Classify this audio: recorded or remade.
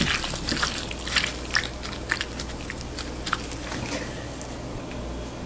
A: recorded